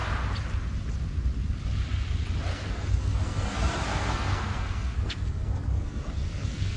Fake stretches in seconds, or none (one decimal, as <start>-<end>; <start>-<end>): 2.5-6.8